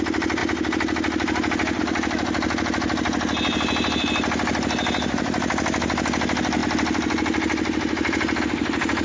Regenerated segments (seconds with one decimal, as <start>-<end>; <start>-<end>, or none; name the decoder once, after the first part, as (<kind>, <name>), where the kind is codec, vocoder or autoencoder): none